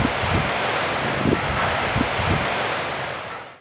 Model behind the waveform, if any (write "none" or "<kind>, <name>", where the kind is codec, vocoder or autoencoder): none